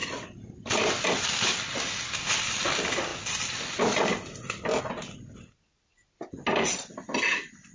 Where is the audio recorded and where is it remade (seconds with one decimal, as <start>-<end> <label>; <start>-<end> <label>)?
0.0-7.7 recorded